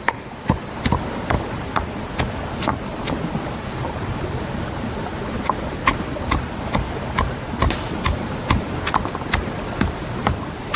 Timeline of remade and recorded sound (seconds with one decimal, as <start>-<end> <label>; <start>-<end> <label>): 0.0-2.4 recorded; 2.4-3.3 remade; 3.3-10.8 recorded